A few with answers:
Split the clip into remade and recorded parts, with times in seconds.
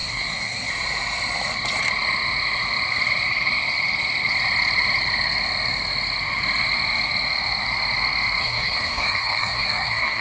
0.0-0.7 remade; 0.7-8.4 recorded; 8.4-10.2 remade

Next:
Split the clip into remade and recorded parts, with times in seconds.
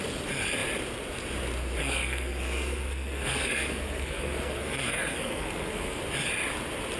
0.0-1.8 recorded; 1.8-6.0 remade; 6.0-7.0 recorded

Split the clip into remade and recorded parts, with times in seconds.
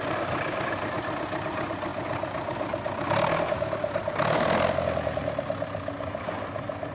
0.0-6.9 recorded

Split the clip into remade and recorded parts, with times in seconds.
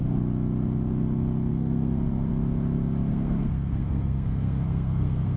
0.0-1.5 recorded; 1.5-2.3 remade; 2.3-3.1 recorded; 3.1-5.4 remade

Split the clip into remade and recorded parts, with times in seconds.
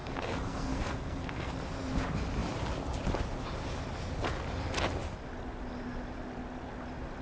0.0-1.5 remade; 1.5-7.2 recorded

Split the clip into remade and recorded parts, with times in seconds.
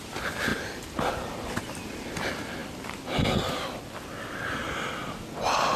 0.0-5.8 recorded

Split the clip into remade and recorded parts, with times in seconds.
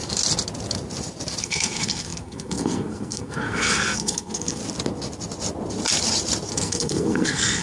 0.0-1.4 recorded; 1.4-4.6 remade; 4.6-6.5 recorded; 6.5-7.6 remade